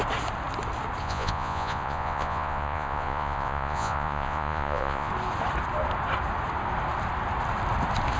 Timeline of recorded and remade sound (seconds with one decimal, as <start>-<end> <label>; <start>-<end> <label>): 0.0-1.0 recorded; 1.0-5.1 remade; 5.1-8.2 recorded